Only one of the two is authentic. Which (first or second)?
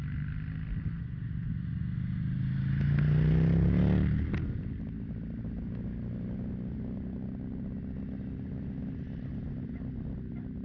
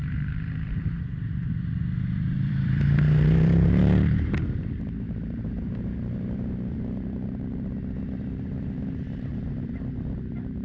first